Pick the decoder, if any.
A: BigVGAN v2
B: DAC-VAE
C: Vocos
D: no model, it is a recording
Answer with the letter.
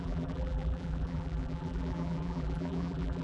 A